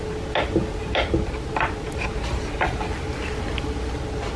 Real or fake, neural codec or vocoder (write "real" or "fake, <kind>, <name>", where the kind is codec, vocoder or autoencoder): real